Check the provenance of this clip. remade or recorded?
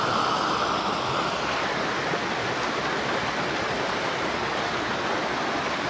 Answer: recorded